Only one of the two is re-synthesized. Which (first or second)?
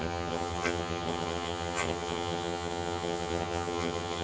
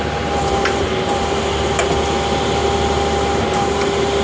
first